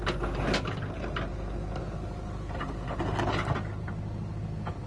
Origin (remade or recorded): recorded